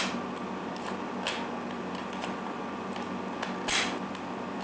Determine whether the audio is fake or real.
real